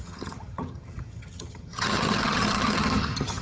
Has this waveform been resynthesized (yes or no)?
yes